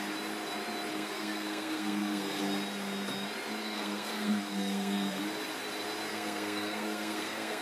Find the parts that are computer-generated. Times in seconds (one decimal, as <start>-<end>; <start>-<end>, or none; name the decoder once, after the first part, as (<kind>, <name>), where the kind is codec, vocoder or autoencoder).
0.9-2.4 (codec, SNAC); 3.6-5.2; 6.1-7.6